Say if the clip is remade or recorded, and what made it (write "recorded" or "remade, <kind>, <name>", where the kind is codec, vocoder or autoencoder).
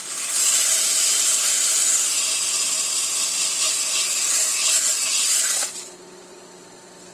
recorded